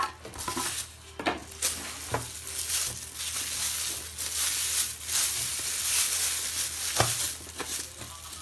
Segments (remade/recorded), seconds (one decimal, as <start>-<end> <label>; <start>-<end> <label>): 0.0-8.4 recorded